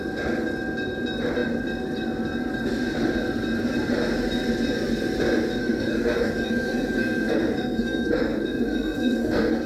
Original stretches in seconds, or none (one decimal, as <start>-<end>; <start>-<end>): 0.0-5.6